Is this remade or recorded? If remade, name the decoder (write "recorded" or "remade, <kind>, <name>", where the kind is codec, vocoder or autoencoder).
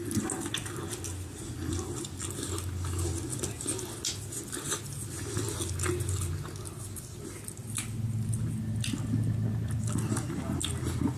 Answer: recorded